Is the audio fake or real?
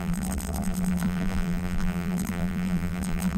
fake